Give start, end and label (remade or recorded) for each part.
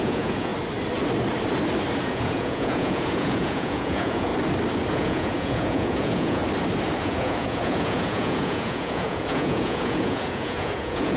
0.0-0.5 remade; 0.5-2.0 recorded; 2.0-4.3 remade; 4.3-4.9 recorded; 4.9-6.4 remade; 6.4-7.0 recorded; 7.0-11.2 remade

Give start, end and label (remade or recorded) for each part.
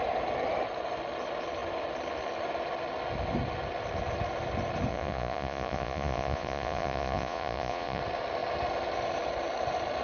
0.0-4.9 recorded; 4.9-8.0 remade; 8.0-10.0 recorded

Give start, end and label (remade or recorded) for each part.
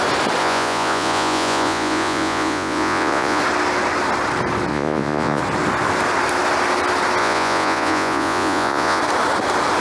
0.0-0.4 recorded; 0.4-3.4 remade; 3.4-4.7 recorded; 4.7-5.4 remade; 5.4-7.2 recorded; 7.2-9.0 remade; 9.0-9.8 recorded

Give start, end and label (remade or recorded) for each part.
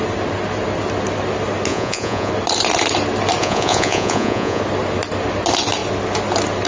0.0-1.7 recorded; 1.7-2.3 remade; 2.3-3.4 recorded; 3.4-4.6 remade; 4.6-6.7 recorded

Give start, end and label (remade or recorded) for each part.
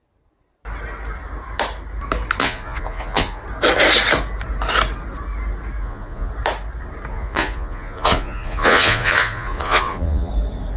0.0-2.4 recorded; 2.4-3.4 remade; 3.4-5.8 recorded; 5.8-6.3 remade; 6.3-7.1 recorded; 7.1-10.3 remade; 10.3-10.8 recorded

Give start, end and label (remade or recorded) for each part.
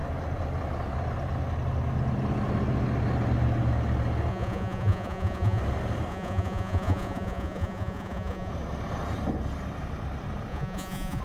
0.0-4.3 recorded; 4.3-5.6 remade; 5.6-6.1 recorded; 6.1-8.5 remade; 8.5-10.5 recorded; 10.5-11.2 remade